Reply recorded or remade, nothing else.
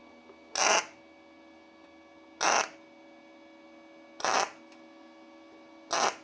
recorded